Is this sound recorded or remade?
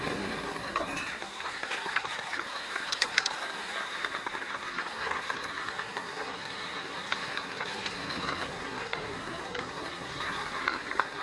remade